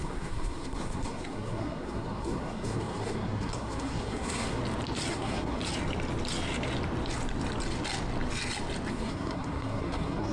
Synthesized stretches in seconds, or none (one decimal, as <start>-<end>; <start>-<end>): 0.0-4.6; 5.1-5.6; 8.9-10.3